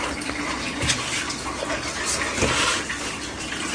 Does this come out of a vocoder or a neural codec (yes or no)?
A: no